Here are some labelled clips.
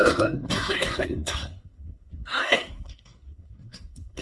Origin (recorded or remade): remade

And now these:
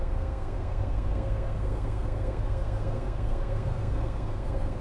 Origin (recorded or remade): remade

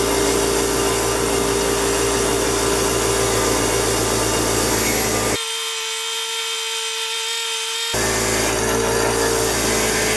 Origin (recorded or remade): recorded